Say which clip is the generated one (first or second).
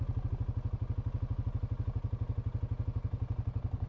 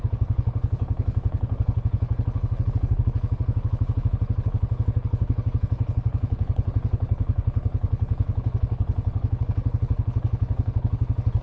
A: second